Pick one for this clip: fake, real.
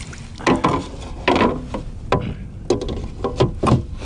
real